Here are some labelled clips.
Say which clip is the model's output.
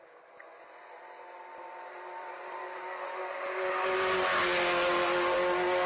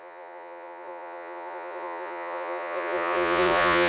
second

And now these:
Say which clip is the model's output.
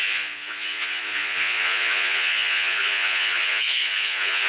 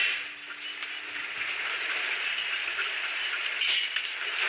first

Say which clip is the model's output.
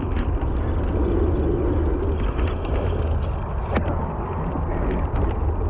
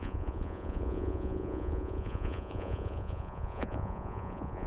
second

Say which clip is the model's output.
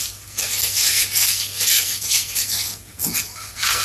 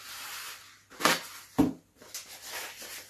first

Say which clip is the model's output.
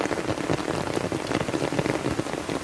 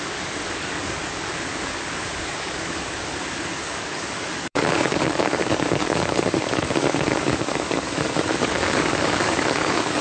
second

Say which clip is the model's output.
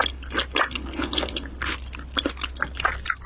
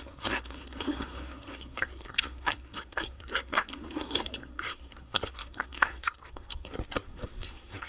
second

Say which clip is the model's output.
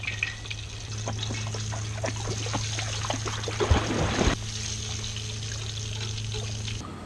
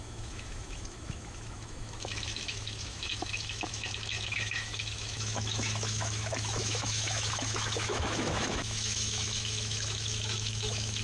second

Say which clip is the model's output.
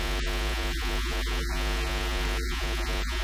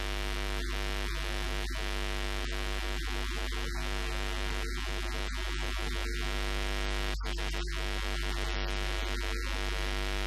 first